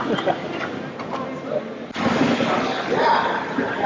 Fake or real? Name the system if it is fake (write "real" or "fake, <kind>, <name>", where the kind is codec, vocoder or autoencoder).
real